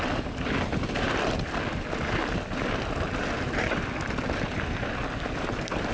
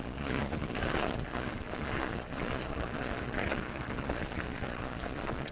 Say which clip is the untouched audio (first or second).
first